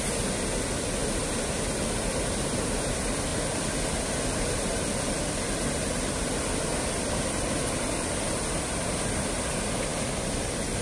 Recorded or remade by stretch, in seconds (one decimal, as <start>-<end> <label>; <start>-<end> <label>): 0.0-10.8 recorded